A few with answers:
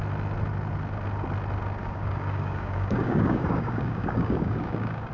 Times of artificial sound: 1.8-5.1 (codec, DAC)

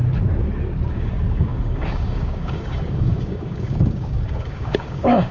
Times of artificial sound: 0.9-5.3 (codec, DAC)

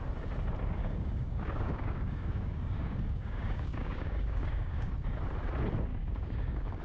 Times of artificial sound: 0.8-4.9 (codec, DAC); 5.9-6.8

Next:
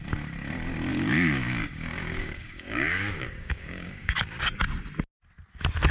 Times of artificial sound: 0.9-4.4 (codec, DAC)

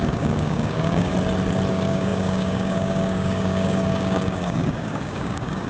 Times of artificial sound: 0.0-1.1 (codec, DAC); 1.7-5.7